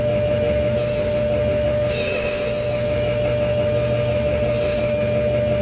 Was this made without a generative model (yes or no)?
no